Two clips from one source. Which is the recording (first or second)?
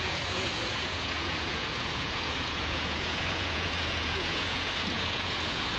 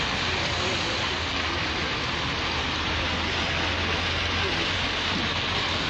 second